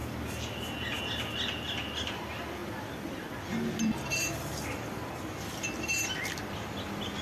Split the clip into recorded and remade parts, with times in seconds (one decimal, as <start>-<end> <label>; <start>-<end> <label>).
0.0-7.2 recorded